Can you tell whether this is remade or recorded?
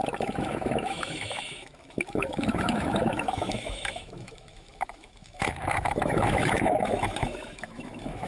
remade